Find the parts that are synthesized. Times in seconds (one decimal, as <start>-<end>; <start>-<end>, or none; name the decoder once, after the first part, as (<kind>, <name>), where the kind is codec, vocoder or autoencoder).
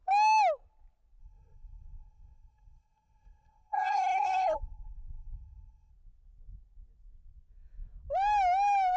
1.2-5.9 (codec, SNAC)